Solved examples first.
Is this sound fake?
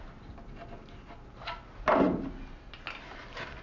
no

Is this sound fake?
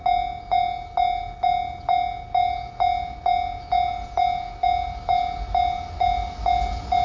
no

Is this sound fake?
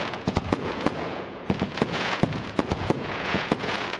yes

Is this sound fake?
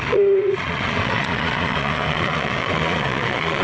yes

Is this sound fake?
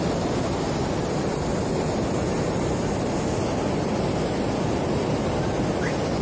no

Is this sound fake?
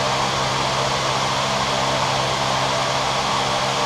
no